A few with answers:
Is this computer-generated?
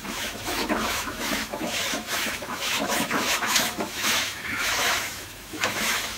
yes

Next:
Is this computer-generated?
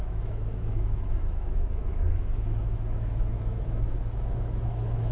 yes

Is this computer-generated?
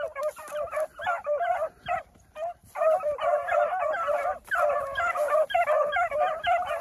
no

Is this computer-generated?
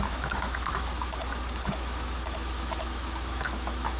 yes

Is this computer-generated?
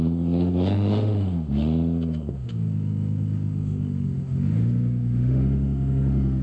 yes